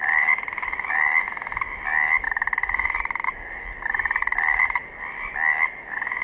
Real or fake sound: real